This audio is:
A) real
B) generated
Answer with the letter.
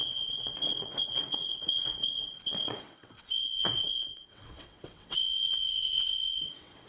B